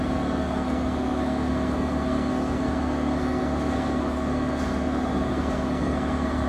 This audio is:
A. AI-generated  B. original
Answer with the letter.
A